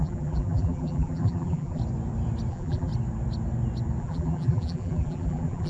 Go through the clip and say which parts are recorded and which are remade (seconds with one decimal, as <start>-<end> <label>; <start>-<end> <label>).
0.0-1.8 remade; 1.8-2.5 recorded; 2.5-2.9 remade; 2.9-4.0 recorded; 4.0-5.7 remade